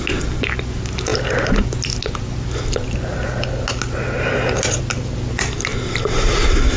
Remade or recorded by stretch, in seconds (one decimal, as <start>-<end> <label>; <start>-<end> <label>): 0.0-6.8 recorded